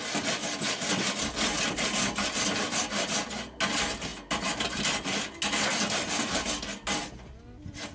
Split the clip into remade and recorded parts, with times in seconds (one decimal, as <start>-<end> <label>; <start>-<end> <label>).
0.0-7.9 recorded